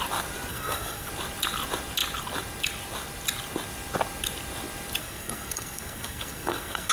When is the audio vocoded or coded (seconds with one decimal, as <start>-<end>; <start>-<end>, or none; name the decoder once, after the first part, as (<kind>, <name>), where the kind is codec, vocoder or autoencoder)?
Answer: 0.5-1.1 (codec, SNAC); 5.0-6.9